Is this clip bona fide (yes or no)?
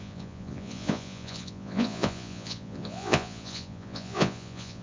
no